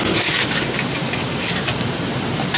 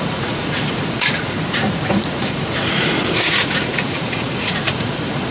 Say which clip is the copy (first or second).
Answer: second